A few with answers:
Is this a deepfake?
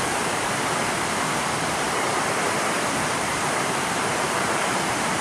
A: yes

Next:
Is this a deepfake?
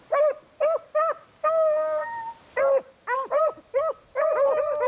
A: no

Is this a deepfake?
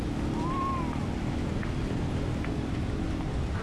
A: no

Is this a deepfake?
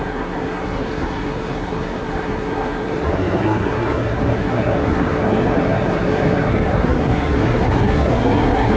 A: yes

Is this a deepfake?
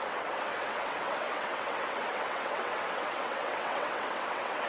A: yes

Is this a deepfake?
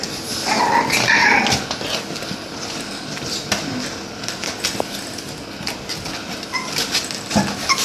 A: no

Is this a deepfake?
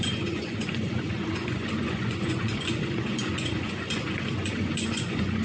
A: yes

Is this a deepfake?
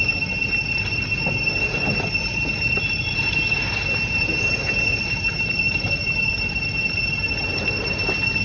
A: no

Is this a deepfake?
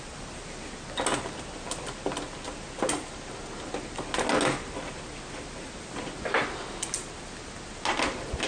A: no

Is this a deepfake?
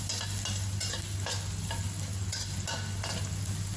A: no